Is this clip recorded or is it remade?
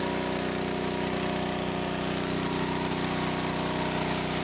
recorded